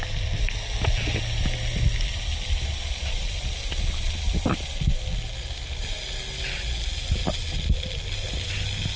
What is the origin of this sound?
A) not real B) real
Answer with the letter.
B